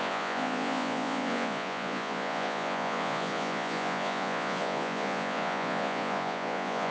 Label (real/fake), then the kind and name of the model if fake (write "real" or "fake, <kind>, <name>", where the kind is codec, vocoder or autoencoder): fake, vocoder, Vocos